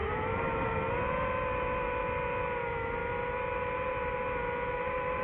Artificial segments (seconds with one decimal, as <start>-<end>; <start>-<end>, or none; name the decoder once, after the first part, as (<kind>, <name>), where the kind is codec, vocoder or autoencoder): none